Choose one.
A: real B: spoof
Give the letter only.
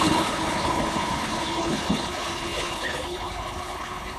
B